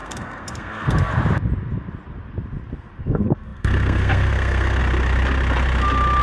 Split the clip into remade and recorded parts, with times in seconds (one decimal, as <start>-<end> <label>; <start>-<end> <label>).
0.0-1.1 remade; 1.1-3.0 recorded; 3.0-4.8 remade; 4.8-6.2 recorded